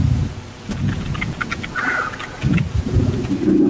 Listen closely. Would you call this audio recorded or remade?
recorded